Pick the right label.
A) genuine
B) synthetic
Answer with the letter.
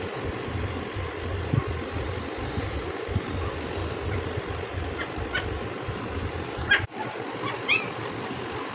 A